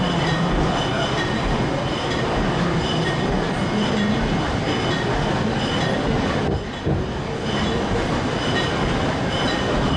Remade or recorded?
recorded